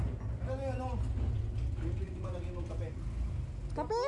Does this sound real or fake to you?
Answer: real